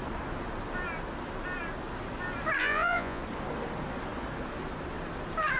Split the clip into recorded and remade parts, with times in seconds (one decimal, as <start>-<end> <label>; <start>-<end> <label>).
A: 0.0-2.6 recorded; 2.6-3.2 remade; 3.2-5.6 recorded